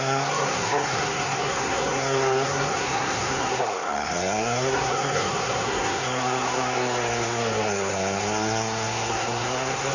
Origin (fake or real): fake